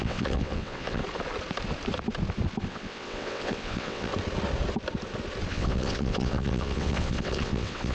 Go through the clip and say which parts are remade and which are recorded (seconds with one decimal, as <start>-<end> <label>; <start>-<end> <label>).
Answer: 0.0-1.0 remade; 1.0-2.7 recorded; 2.7-4.1 remade; 4.1-5.5 recorded; 5.5-7.9 remade